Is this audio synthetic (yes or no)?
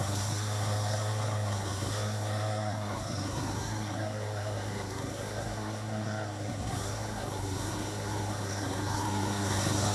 yes